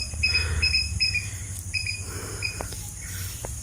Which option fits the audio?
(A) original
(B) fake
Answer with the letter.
A